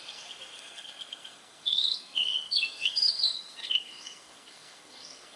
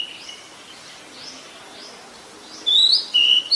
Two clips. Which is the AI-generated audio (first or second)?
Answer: first